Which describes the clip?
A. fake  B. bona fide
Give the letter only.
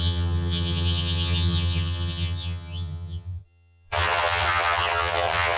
A